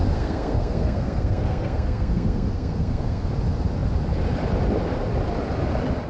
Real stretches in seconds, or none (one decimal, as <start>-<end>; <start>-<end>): 3.3-6.1